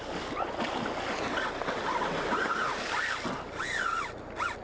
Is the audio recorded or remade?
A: recorded